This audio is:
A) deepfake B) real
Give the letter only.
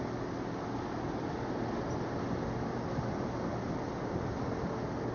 B